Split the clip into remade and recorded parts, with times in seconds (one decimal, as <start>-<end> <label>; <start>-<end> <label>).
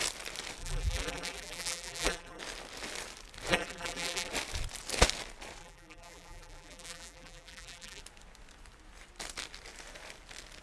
0.0-0.6 recorded; 0.6-2.4 remade; 2.4-3.5 recorded; 3.5-4.3 remade; 4.3-5.6 recorded; 5.6-8.0 remade; 8.0-10.6 recorded